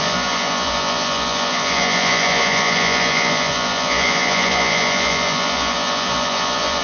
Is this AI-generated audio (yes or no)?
yes